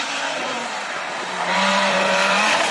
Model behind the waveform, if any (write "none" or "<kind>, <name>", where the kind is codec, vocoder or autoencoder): vocoder, BigVGAN v2